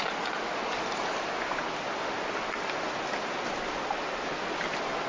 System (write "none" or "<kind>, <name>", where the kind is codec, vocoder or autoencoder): none